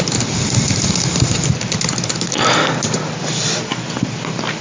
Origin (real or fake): real